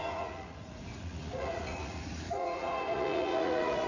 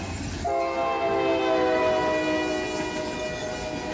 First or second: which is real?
second